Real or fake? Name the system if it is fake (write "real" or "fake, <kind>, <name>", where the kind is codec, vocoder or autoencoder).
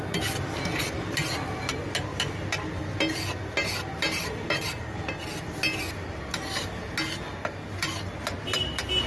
real